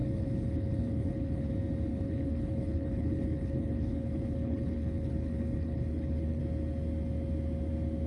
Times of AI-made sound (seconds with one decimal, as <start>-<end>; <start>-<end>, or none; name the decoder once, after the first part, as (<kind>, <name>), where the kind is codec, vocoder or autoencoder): 0.0-1.5 (codec, HILCodec); 1.9-6.4